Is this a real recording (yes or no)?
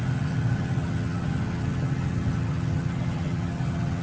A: no